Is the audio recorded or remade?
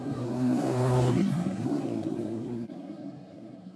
remade